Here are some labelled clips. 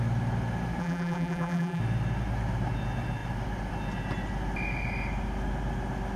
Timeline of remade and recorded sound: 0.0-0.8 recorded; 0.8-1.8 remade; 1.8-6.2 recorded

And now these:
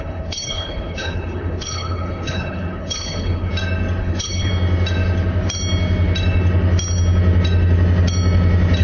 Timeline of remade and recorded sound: 0.0-3.5 remade; 3.5-4.0 recorded; 4.0-4.5 remade; 4.5-8.8 recorded